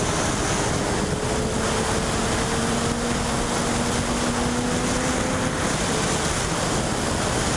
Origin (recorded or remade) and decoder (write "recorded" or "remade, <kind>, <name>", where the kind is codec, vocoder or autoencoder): recorded